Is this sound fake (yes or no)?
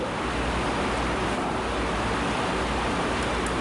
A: no